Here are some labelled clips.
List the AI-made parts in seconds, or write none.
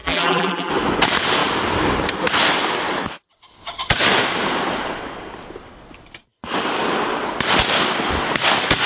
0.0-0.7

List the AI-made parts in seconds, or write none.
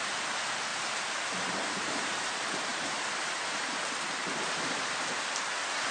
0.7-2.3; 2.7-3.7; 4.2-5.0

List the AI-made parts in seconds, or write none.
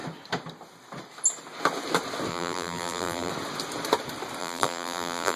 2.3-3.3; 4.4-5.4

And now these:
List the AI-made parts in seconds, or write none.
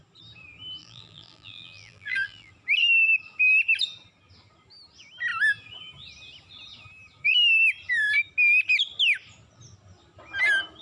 0.8-2.5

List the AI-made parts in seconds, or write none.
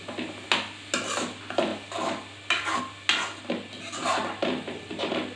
4.0-4.9